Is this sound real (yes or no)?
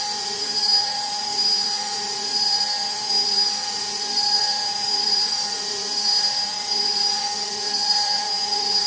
no